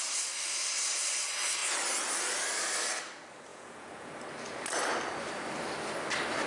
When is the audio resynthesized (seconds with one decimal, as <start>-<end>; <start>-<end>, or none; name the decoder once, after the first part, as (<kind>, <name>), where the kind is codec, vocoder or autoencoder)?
3.5-4.1 (vocoder, Vocos)